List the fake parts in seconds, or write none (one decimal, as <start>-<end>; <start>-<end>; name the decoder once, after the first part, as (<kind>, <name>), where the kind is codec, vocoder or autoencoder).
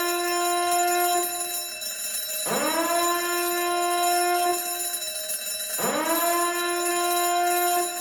none